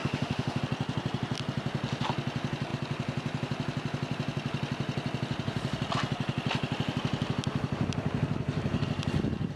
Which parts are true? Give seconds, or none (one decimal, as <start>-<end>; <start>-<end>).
0.6-9.6